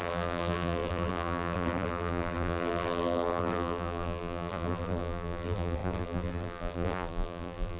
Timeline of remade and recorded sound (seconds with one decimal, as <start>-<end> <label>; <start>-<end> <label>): 0.0-7.8 remade